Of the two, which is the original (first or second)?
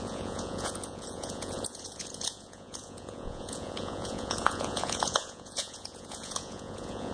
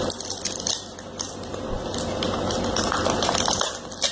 second